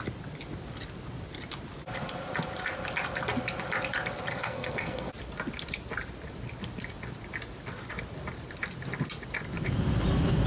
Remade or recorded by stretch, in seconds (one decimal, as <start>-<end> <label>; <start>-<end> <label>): 0.0-4.3 recorded; 4.3-5.1 remade; 5.1-10.5 recorded